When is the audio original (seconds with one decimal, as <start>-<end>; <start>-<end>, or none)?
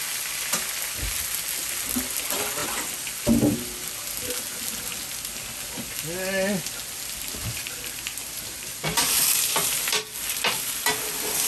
0.0-7.4; 10.0-11.5